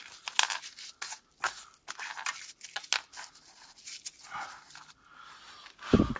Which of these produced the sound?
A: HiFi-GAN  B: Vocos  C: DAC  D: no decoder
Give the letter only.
D